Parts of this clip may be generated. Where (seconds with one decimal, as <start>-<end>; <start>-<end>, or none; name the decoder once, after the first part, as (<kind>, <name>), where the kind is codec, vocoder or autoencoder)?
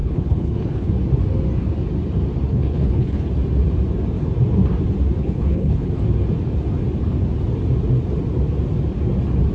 0.0-0.9 (codec, HILCodec); 2.5-3.3; 5.2-5.9